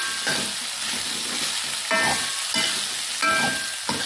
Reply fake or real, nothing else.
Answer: real